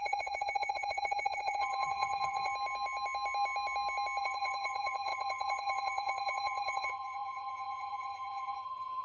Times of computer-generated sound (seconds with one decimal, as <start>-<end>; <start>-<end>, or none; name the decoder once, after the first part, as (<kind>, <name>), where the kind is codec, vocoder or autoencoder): 0.0-2.5 (vocoder, HiFi-GAN); 4.2-9.0